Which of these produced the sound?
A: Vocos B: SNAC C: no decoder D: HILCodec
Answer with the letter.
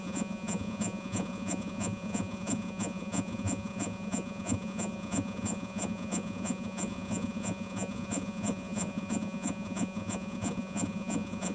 A